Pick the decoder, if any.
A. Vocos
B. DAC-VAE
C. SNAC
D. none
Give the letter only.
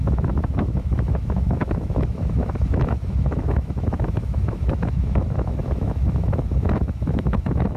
B